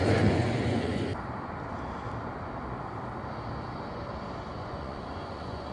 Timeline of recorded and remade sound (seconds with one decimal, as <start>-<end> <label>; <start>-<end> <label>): 0.0-1.1 remade; 1.1-4.5 recorded; 4.5-5.7 remade